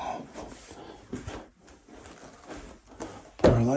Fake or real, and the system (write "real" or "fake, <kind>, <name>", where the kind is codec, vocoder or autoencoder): real